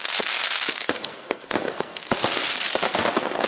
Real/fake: fake